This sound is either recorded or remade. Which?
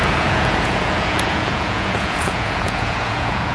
remade